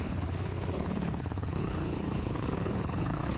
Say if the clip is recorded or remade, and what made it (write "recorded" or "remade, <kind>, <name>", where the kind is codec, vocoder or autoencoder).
remade, codec, HILCodec